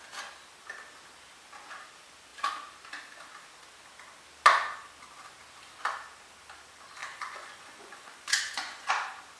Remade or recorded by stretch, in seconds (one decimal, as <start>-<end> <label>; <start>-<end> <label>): 0.0-7.0 recorded; 7.0-8.9 remade; 8.9-9.4 recorded